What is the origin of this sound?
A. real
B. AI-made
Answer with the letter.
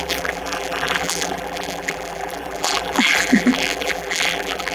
B